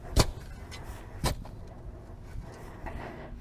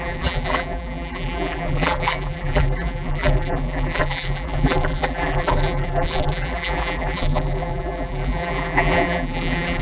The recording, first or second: first